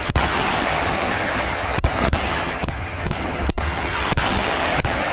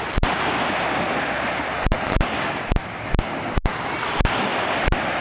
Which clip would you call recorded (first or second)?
second